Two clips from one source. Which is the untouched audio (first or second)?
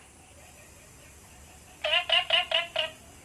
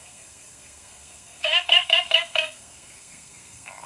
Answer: first